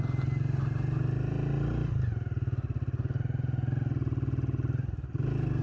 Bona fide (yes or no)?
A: yes